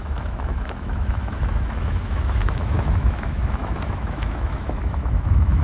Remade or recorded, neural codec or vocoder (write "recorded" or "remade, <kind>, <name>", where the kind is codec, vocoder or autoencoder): remade, autoencoder, DAC-VAE